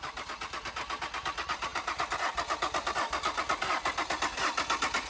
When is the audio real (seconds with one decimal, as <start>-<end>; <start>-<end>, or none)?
0.0-5.1